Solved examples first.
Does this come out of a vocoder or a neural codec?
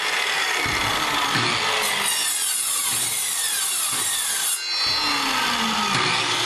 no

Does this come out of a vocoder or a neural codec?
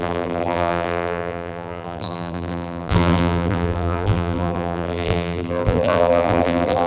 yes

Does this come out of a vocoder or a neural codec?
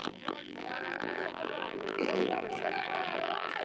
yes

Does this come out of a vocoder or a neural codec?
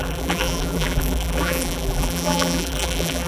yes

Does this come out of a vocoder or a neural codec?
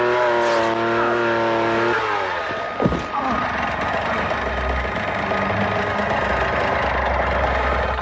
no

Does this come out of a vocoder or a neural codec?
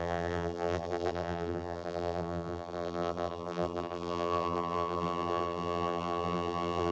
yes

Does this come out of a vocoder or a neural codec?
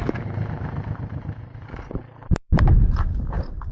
yes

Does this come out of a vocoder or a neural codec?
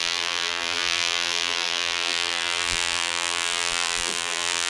yes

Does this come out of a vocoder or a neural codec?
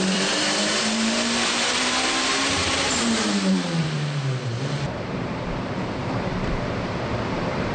yes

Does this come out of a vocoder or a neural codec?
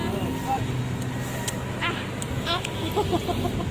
no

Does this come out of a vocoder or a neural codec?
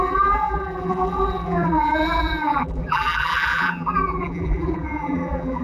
yes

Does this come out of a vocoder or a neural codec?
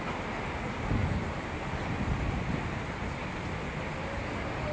no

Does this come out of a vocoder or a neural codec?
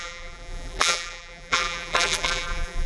yes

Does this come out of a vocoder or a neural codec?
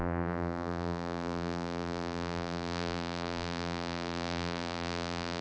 yes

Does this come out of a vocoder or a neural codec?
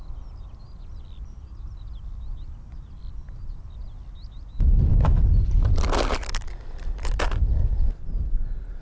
no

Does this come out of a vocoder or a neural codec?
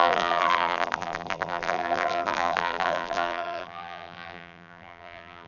yes